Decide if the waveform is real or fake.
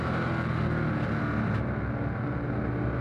real